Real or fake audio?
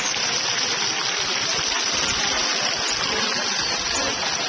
real